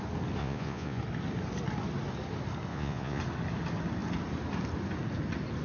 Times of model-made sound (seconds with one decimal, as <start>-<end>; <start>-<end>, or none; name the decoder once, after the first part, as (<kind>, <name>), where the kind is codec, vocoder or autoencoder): 0.4-1.0 (vocoder, Vocos); 2.7-3.2